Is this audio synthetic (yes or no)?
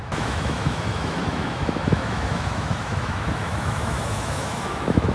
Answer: yes